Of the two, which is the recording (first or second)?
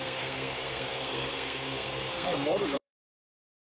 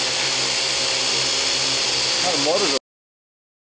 second